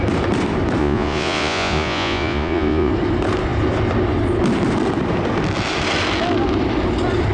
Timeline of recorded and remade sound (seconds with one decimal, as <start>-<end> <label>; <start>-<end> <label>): 0.0-0.8 recorded; 0.8-2.9 remade; 2.9-7.3 recorded